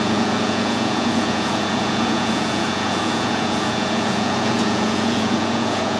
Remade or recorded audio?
remade